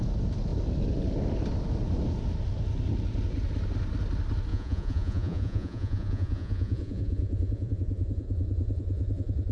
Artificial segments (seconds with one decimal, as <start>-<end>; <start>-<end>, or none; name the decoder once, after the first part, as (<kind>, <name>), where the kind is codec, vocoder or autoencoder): 4.5-9.5 (vocoder, Vocos)

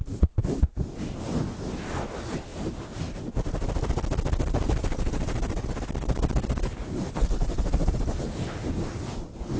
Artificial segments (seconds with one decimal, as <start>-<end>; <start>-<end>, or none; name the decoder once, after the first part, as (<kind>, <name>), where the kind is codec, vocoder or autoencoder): 2.5-3.0 (vocoder, BigVGAN v2)

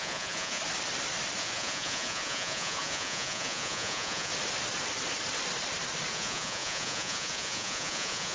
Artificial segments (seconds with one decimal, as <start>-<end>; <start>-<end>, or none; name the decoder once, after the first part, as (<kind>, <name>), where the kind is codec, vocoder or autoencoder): 0.0-0.6 (vocoder, Vocos); 1.4-4.3; 6.1-8.3

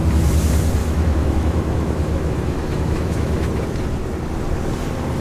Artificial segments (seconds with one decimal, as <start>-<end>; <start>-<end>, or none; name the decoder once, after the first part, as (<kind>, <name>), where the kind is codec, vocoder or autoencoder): 0.8-3.5 (autoencoder, DAC-VAE)